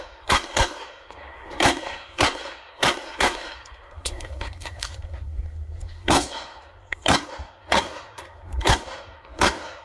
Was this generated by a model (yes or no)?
yes